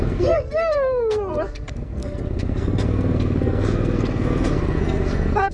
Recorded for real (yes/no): no